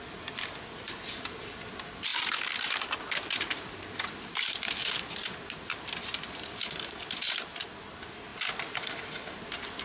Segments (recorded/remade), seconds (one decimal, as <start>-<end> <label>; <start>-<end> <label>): 0.0-9.8 recorded